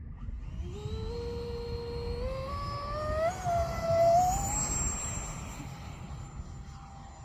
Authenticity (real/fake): real